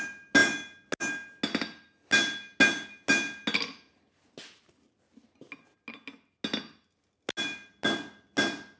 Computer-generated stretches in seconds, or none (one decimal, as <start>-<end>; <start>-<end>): none